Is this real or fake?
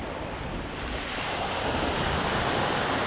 real